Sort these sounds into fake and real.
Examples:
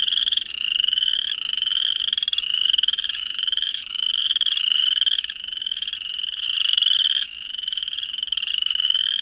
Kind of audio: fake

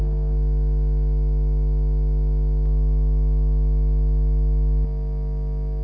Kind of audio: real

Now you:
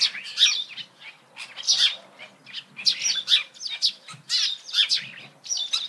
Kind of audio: real